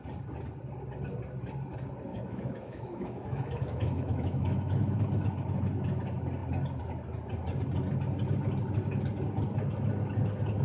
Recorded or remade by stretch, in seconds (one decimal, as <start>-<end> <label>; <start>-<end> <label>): 0.0-2.1 recorded; 2.1-5.0 remade; 5.0-10.6 recorded